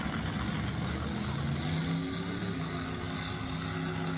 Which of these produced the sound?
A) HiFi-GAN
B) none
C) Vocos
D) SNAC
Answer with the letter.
B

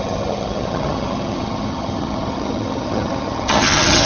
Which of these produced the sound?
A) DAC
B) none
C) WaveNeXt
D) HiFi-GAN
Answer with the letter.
D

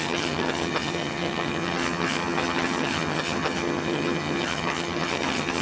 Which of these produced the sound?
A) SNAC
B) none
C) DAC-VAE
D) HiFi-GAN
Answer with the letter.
D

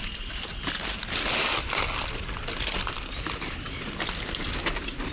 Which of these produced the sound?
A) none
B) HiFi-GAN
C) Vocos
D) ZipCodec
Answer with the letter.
A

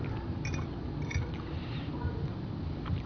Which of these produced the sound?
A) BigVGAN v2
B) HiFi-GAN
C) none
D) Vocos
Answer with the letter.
C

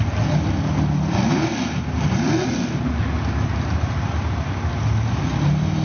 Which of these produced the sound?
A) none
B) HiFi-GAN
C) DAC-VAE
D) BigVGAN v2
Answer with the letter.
A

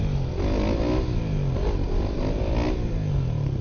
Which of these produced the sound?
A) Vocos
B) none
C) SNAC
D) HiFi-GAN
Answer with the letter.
B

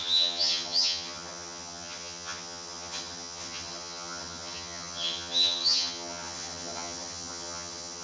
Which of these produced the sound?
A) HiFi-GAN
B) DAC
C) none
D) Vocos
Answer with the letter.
A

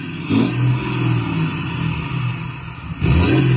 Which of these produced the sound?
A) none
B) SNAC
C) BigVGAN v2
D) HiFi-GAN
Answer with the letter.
A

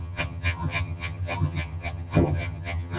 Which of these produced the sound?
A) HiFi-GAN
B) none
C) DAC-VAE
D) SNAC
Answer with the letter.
A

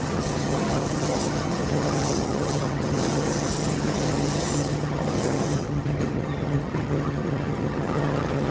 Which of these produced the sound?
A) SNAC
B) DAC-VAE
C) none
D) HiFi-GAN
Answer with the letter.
D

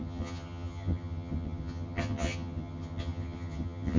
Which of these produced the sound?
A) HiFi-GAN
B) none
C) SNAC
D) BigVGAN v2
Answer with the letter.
A